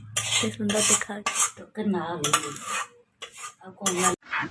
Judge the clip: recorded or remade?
recorded